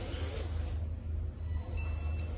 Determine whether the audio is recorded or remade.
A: recorded